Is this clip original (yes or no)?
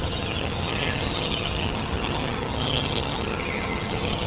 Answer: no